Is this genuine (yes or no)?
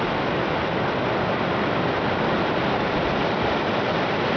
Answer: no